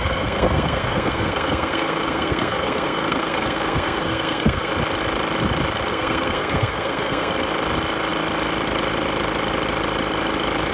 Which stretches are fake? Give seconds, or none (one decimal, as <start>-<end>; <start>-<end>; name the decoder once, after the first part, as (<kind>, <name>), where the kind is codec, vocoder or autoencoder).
0.0-4.7 (codec, SNAC); 5.9-7.3